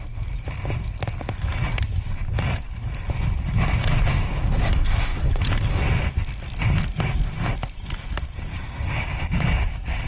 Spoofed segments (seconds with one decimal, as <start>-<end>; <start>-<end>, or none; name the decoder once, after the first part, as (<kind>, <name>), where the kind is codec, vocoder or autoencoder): none